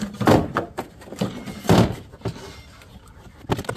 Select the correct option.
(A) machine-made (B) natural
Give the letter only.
B